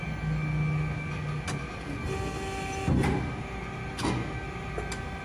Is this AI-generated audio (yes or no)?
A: no